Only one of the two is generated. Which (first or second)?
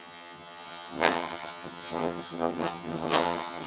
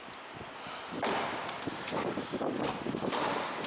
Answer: first